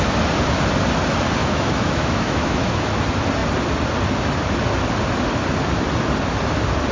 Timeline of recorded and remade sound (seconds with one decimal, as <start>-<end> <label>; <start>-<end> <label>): 0.0-1.4 recorded; 1.4-2.9 remade; 2.9-6.9 recorded